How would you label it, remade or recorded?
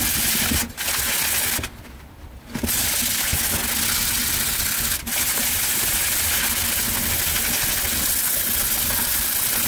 recorded